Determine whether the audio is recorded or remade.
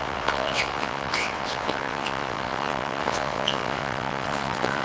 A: remade